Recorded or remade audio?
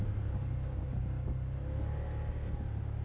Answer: recorded